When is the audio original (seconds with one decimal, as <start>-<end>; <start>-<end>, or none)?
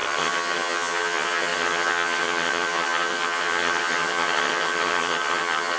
none